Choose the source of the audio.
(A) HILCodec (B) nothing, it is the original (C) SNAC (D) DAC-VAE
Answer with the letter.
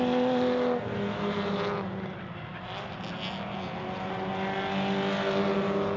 B